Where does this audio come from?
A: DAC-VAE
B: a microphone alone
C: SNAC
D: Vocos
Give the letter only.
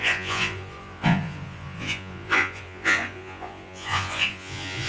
D